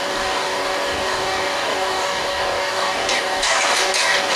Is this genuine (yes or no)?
no